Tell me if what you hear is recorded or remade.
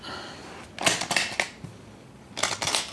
recorded